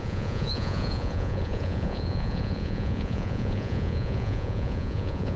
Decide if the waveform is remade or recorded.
remade